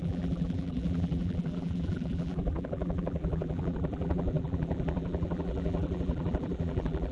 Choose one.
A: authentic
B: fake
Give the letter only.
B